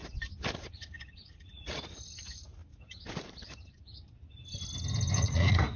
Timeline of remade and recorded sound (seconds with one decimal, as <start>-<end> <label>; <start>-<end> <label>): 0.0-0.6 recorded; 0.6-2.6 remade; 2.6-5.1 recorded; 5.1-5.8 remade